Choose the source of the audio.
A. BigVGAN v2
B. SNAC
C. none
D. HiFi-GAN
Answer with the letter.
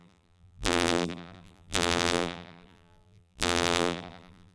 A